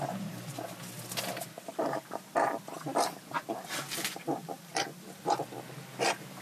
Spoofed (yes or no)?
no